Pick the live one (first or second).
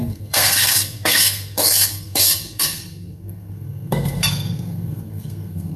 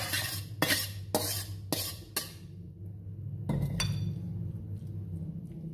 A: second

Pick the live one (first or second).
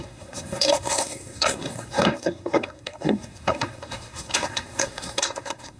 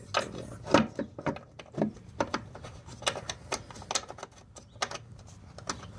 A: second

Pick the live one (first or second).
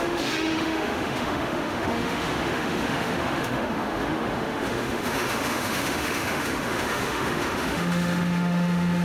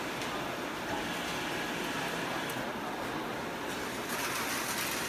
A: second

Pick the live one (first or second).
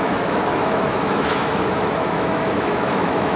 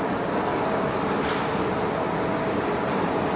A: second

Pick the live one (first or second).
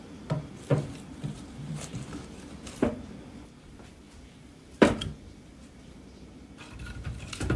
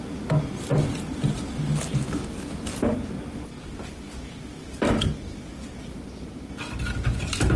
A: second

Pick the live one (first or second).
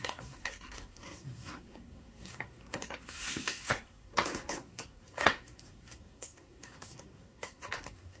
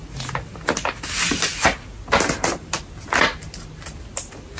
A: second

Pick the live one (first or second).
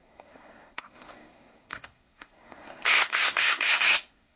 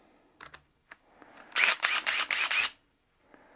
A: second